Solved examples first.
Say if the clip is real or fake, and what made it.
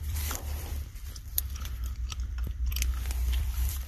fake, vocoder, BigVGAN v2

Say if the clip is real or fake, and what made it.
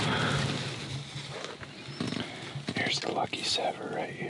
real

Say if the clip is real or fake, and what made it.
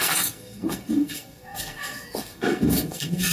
fake, codec, SNAC